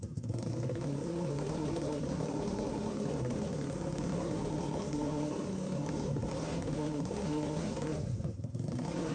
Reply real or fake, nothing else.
fake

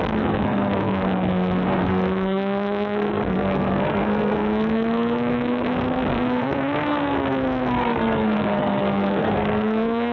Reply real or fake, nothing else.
fake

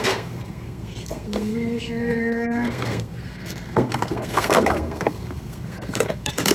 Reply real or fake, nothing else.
fake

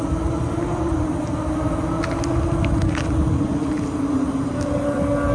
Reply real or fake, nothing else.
real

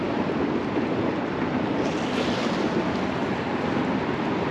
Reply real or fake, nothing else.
real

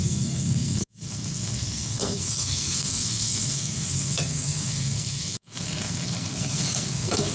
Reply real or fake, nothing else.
fake